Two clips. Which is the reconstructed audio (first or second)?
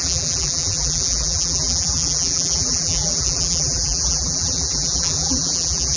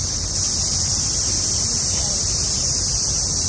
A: first